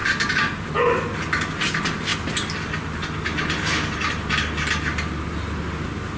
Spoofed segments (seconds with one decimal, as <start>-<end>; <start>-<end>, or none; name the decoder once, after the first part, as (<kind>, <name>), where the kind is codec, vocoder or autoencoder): none